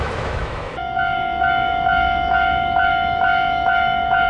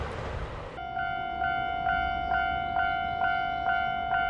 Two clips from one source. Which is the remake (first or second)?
first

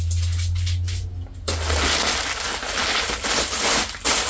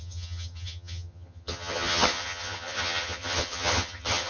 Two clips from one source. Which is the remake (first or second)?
second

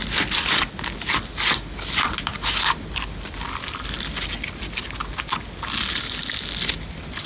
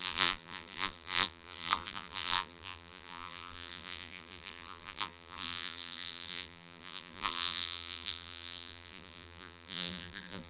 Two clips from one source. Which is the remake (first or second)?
second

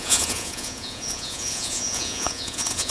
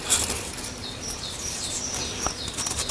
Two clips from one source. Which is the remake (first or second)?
first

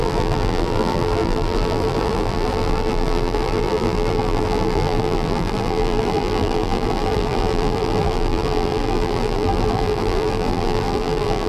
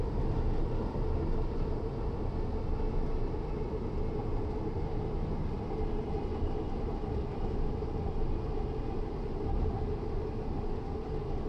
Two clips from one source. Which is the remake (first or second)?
first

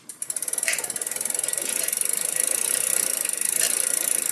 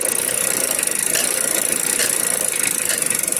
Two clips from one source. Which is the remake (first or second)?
first